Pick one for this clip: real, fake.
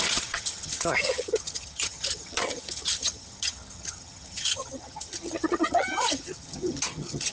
fake